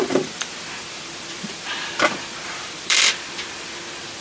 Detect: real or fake fake